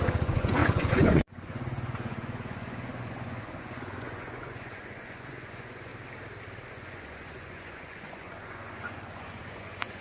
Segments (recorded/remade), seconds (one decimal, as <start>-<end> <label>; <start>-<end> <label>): 0.0-5.9 remade; 5.9-6.7 recorded; 6.7-10.0 remade